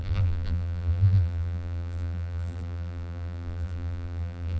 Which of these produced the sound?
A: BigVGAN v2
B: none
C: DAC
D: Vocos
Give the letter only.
A